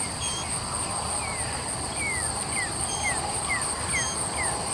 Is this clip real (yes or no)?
yes